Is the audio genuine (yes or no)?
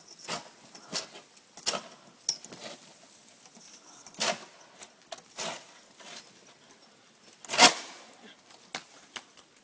yes